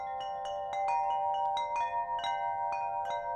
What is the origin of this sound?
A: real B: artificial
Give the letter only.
A